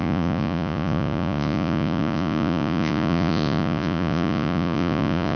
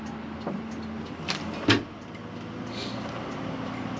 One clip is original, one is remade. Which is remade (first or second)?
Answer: first